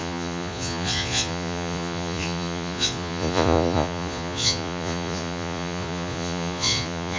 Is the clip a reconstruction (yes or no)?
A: yes